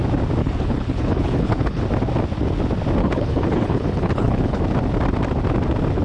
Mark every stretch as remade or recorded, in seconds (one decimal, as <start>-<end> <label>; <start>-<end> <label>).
0.0-0.4 recorded; 0.4-1.8 remade; 1.8-3.0 recorded; 3.0-4.6 remade; 4.6-6.0 recorded